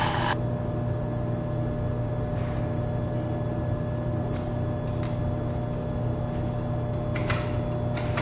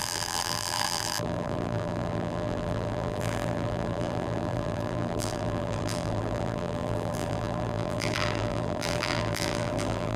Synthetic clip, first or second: second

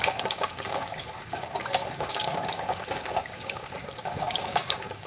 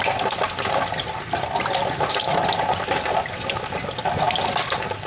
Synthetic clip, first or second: first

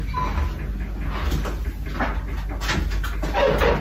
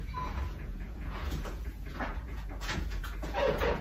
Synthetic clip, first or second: second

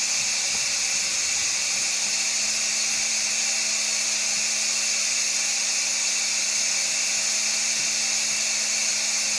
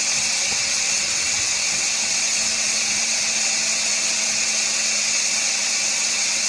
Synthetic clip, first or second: second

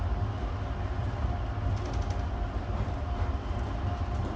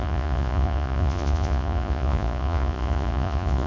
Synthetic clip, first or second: second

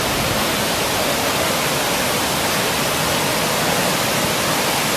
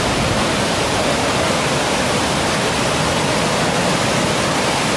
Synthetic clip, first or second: second